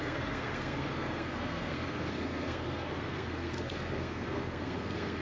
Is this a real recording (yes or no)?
no